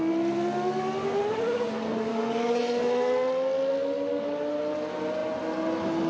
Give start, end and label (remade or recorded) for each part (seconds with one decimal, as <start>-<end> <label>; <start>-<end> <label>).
0.0-2.1 recorded; 2.1-2.6 remade; 2.6-6.1 recorded